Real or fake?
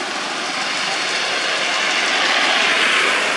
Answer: real